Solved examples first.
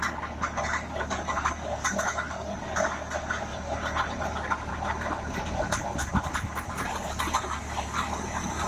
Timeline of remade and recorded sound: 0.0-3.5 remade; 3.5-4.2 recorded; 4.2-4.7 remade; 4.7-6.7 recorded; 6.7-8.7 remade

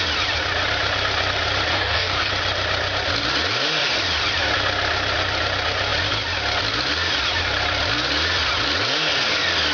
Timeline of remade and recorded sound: 0.0-1.7 recorded; 1.7-2.3 remade; 2.3-9.7 recorded

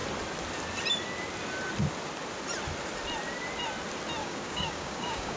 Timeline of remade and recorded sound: 0.0-4.2 recorded; 4.2-5.4 remade

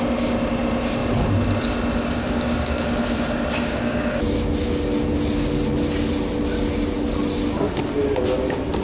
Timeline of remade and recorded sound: 0.0-2.2 recorded; 2.2-3.0 remade; 3.0-3.7 recorded; 3.7-4.2 remade; 4.2-8.8 recorded

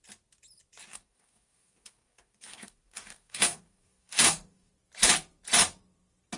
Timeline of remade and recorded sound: 0.0-0.9 recorded; 0.9-4.7 remade; 4.7-6.4 recorded

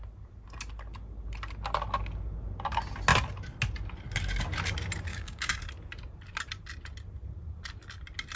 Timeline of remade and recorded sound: 0.0-5.1 recorded; 5.1-5.6 remade; 5.6-8.4 recorded

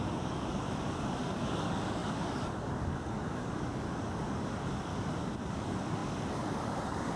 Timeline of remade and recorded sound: 0.0-4.9 remade; 4.9-5.5 recorded; 5.5-7.2 remade